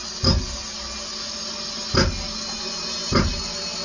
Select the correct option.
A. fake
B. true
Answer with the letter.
B